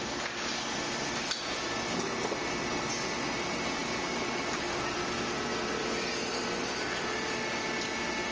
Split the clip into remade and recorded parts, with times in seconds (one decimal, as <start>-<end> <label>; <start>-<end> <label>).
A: 0.0-8.3 recorded